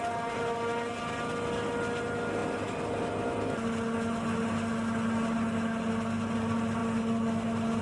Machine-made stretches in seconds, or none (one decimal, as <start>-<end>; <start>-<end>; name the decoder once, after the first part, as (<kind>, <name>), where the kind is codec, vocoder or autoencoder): none